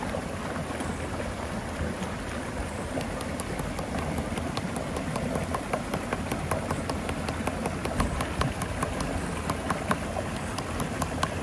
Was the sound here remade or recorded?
recorded